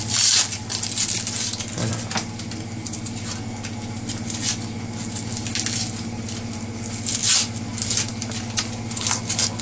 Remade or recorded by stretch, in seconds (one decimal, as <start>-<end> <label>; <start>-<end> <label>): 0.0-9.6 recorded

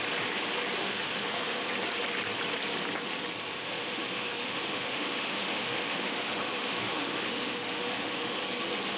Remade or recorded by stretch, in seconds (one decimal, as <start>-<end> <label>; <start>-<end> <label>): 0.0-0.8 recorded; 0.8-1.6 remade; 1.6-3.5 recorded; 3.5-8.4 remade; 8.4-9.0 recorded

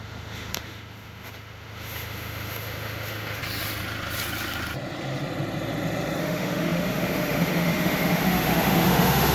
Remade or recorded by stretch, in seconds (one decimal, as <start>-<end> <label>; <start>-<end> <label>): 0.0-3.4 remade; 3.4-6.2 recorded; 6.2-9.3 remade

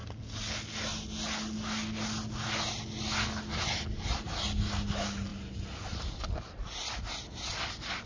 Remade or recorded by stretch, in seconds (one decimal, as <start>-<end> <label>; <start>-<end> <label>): 0.0-8.1 recorded

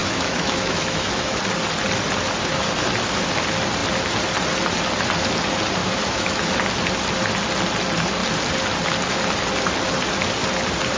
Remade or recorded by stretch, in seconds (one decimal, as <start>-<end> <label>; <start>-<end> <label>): 0.0-1.4 remade; 1.4-5.8 recorded; 5.8-6.5 remade; 6.5-11.0 recorded

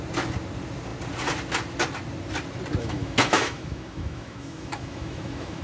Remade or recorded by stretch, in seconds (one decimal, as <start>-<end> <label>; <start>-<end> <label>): 0.0-2.8 recorded; 2.8-5.6 remade